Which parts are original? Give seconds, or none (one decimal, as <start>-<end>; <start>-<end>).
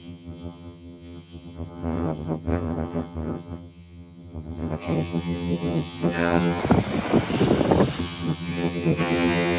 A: 6.6-8.0